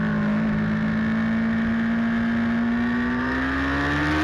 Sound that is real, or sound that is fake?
real